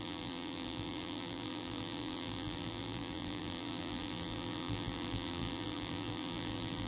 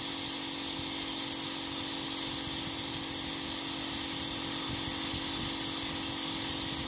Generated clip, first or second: first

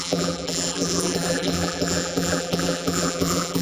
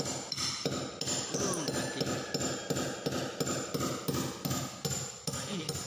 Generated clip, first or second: first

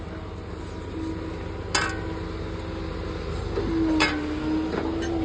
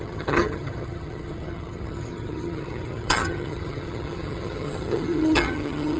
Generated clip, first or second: second